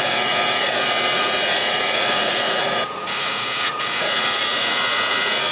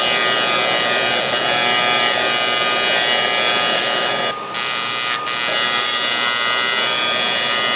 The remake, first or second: first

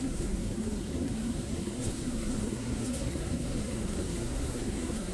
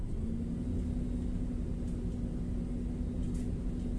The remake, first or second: first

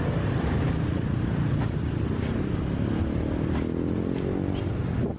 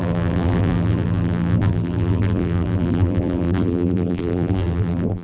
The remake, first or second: second